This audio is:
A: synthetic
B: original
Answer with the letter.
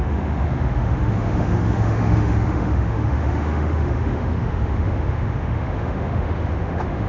A